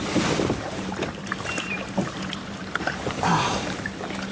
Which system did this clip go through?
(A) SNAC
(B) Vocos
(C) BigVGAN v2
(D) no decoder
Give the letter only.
C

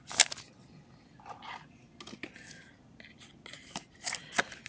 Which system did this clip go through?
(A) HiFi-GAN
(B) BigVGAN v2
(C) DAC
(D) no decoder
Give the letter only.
D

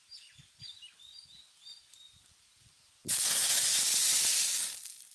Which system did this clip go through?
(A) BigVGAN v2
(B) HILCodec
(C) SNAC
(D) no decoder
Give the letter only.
D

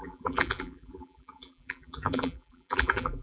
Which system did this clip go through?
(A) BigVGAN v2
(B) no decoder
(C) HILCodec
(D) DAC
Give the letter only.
A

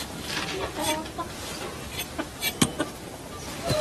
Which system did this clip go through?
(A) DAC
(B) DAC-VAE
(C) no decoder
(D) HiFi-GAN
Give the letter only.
C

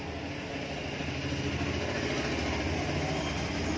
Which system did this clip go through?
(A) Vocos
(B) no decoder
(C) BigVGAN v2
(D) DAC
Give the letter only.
B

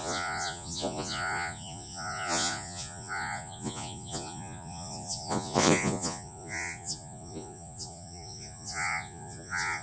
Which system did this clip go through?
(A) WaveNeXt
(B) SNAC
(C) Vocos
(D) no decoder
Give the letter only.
C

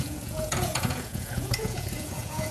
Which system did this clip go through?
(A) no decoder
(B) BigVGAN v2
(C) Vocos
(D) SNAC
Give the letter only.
C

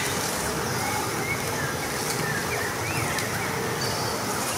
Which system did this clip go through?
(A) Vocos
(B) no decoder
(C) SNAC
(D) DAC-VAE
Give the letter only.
B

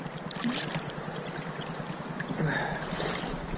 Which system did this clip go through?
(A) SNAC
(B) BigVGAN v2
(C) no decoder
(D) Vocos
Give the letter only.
B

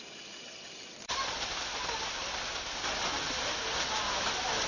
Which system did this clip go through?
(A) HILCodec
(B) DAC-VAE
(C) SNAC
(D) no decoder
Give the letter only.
D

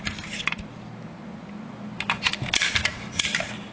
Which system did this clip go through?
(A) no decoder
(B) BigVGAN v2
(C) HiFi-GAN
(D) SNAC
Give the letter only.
B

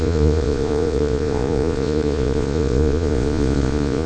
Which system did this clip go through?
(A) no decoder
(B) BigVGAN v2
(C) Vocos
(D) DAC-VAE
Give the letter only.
C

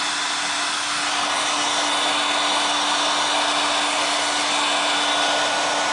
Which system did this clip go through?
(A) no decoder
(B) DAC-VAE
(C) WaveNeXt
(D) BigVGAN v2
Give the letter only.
A